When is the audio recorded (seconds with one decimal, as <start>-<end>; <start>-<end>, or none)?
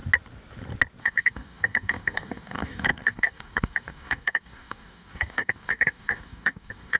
0.0-1.0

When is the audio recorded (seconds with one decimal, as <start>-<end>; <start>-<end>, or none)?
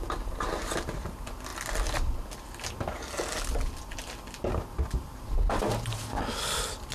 0.0-6.9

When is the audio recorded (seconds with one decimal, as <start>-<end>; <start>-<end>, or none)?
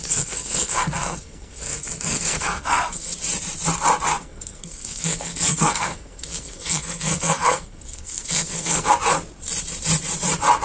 3.1-4.1; 8.9-10.6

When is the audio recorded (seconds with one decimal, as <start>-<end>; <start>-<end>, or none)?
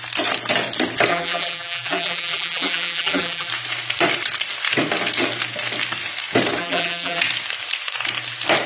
0.0-1.1; 3.5-6.6; 7.2-8.7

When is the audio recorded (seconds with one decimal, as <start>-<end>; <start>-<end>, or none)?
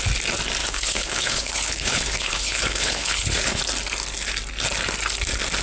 0.0-0.6; 3.6-5.6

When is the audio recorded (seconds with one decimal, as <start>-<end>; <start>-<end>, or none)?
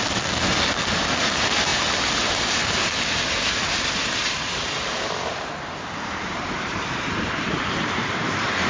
0.0-1.2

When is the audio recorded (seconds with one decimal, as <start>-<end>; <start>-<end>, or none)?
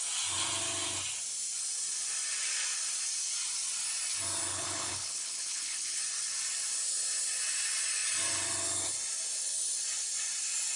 0.0-4.5; 6.0-10.8